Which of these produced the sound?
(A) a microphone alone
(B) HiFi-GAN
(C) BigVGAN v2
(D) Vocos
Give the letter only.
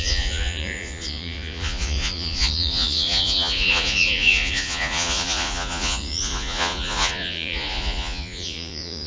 D